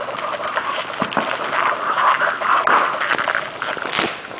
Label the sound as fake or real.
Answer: real